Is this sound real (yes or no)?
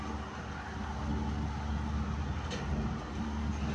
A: yes